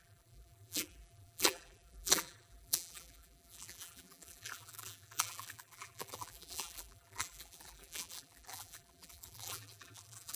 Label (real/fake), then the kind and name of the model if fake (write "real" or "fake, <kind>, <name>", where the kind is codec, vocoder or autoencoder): fake, vocoder, BigVGAN v2